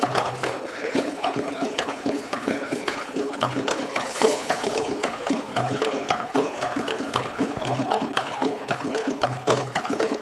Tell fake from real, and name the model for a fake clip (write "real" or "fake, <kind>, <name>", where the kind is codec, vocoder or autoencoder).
fake, codec, HILCodec